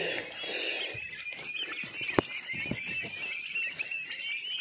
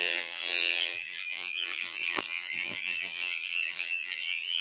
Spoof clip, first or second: second